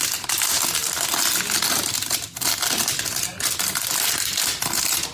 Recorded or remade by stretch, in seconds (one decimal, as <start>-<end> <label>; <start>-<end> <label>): 0.0-5.1 recorded